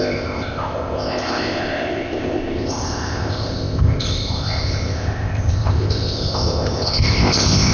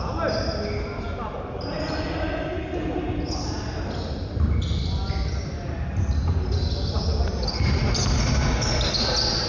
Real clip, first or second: second